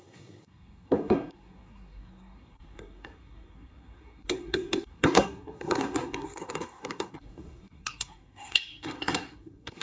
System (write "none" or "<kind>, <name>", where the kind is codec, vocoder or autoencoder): codec, SNAC